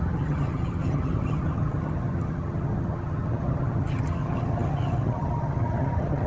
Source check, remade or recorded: remade